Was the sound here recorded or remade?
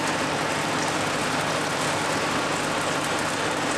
recorded